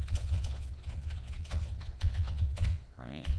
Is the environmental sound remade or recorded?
remade